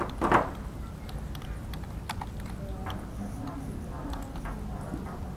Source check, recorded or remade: recorded